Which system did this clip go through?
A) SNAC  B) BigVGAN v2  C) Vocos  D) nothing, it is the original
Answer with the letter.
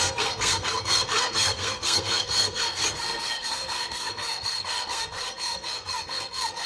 A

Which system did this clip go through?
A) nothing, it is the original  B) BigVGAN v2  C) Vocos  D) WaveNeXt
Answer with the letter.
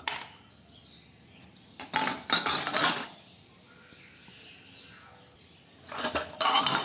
A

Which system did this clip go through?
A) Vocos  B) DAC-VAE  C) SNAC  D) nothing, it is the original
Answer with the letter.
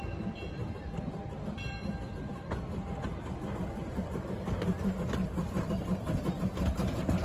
D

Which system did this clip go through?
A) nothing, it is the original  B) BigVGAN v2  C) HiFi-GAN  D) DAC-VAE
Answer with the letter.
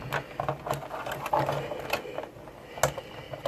A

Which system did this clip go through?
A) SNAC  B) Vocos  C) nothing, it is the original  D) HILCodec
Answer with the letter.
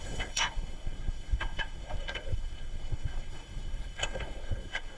A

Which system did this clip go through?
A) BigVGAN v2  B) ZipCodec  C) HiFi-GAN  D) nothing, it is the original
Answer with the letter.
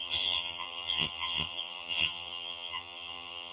C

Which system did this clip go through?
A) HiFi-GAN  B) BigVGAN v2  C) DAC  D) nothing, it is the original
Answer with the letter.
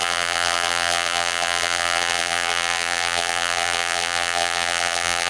B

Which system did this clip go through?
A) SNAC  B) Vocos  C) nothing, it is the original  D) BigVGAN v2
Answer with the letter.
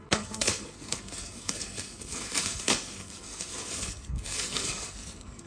A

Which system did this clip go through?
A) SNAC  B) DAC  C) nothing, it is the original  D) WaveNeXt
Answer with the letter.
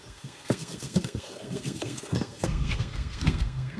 A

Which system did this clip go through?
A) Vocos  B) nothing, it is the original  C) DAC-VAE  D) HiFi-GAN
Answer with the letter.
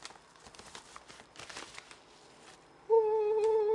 B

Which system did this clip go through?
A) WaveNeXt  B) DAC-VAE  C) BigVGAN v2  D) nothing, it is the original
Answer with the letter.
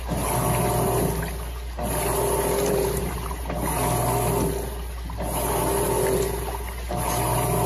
D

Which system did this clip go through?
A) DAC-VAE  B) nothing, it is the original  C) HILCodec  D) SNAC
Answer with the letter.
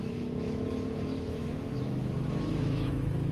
A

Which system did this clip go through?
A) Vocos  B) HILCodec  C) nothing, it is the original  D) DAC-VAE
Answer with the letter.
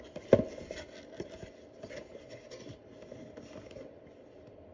C